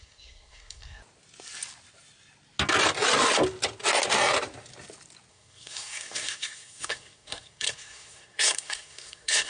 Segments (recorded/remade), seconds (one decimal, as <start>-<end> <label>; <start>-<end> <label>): 0.0-1.0 remade; 1.0-5.3 recorded; 5.3-9.5 remade